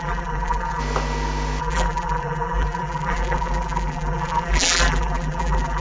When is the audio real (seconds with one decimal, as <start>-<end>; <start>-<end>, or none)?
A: 0.8-1.6